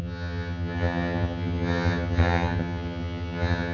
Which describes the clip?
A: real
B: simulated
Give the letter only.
B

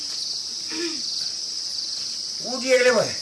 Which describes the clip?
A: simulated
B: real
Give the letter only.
A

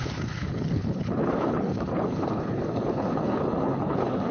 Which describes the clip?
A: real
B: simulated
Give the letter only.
B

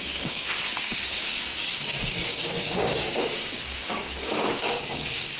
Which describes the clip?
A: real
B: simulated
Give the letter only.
B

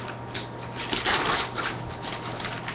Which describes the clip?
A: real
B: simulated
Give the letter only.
A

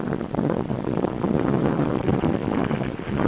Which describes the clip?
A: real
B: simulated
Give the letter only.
B